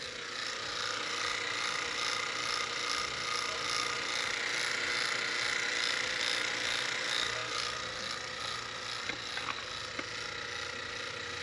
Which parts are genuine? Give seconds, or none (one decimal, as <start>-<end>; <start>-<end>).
0.0-11.4